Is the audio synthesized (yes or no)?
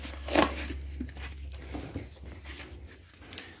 no